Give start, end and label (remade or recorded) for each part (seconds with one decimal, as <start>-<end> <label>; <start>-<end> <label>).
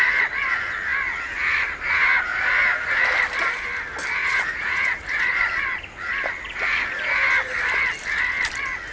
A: 0.0-4.2 recorded; 4.2-5.3 remade; 5.3-8.9 recorded